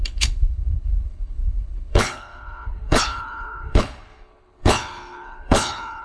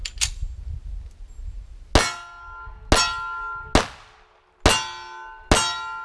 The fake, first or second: first